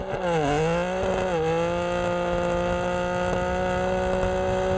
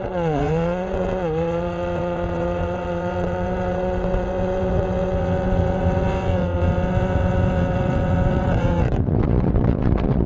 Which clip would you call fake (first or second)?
second